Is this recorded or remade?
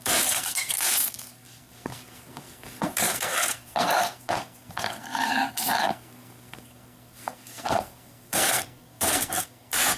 remade